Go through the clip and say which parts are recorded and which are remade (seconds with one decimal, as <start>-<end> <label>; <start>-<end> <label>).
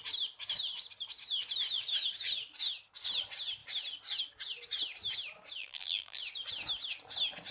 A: 0.0-5.6 recorded; 5.6-6.2 remade; 6.2-7.5 recorded